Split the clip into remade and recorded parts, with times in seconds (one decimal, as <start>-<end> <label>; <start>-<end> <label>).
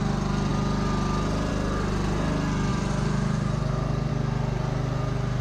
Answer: 0.0-2.7 recorded; 2.7-4.1 remade; 4.1-5.4 recorded